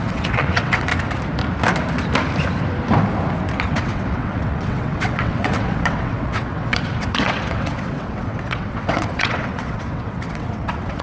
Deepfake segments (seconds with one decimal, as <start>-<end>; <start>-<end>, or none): 0.0-0.9; 3.6-11.0

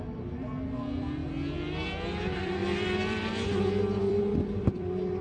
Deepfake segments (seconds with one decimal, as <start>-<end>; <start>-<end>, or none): 2.6-3.6; 4.0-5.2

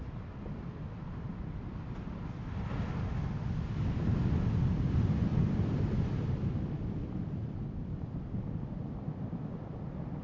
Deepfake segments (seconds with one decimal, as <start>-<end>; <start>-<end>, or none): none

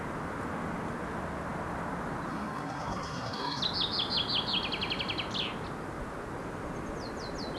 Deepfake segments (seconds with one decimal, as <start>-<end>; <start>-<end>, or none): 2.3-3.6

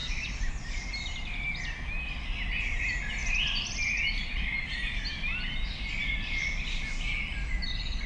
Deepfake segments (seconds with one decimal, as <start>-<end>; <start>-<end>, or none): 3.2-5.2

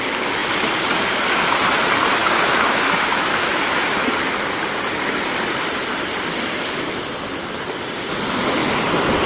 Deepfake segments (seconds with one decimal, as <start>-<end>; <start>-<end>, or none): 2.2-3.6

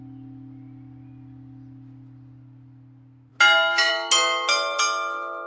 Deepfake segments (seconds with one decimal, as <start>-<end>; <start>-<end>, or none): none